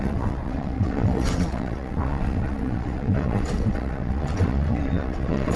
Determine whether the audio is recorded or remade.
remade